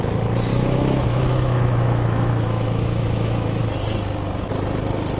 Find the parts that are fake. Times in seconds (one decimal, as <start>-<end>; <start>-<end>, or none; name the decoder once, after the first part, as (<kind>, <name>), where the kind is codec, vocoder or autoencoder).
0.5-3.6 (autoencoder, DAC-VAE)